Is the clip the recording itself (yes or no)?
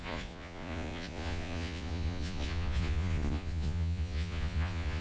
no